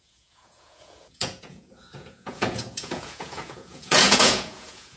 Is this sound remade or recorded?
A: remade